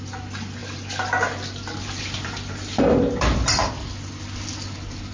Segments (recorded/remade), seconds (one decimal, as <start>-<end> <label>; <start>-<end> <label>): 0.0-5.1 recorded